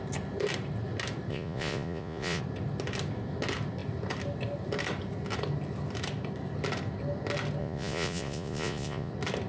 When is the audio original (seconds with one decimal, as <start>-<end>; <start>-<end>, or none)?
0.0-1.3; 2.4-7.6; 9.1-9.5